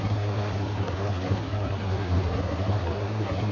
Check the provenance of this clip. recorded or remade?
remade